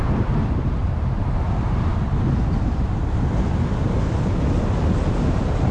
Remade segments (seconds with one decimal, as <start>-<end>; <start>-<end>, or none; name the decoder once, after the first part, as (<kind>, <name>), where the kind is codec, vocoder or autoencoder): 0.0-1.9 (vocoder, BigVGAN v2); 5.3-5.7